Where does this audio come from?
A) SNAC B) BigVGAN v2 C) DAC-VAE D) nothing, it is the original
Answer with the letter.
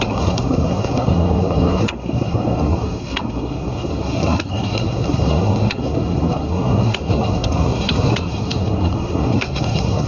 A